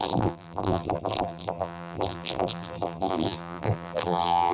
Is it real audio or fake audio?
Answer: fake